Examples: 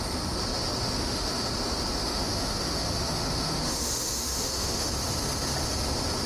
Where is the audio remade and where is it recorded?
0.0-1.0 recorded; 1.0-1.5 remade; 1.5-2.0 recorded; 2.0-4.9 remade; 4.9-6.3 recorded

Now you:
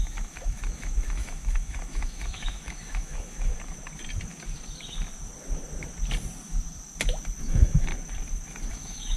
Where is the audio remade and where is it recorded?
0.0-3.5 remade; 3.5-7.4 recorded; 7.4-7.9 remade; 7.9-8.7 recorded; 8.7-9.2 remade

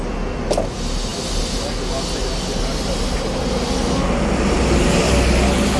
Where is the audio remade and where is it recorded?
0.0-5.8 recorded

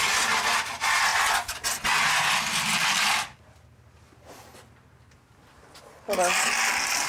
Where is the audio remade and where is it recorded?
0.0-7.1 recorded